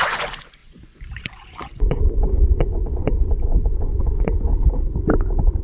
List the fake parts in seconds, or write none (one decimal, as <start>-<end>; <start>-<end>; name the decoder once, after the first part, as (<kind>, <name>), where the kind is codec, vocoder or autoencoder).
0.0-4.5 (vocoder, Vocos)